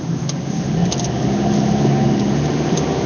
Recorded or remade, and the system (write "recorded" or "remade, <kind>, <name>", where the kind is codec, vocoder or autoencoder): recorded